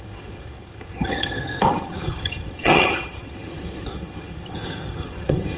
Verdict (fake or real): fake